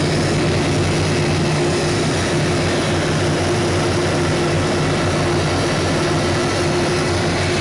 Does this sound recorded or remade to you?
recorded